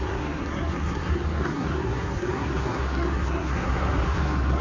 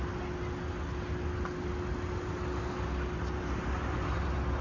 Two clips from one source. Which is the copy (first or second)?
first